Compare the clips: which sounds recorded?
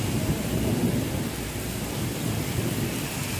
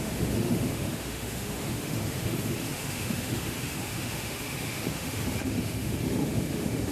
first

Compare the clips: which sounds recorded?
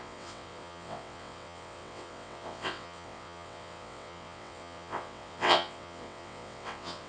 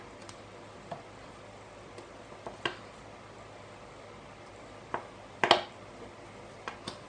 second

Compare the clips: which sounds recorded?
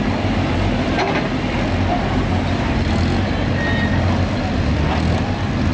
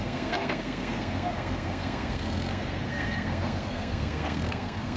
first